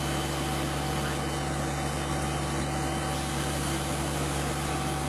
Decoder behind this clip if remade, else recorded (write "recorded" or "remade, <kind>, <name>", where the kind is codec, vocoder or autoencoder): recorded